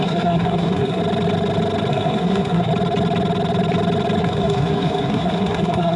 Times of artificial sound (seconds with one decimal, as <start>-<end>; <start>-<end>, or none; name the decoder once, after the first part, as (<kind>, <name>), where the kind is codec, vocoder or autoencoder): 0.0-1.0 (codec, SNAC); 1.9-2.7; 4.2-6.0